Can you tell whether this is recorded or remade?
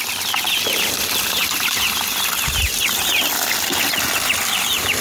recorded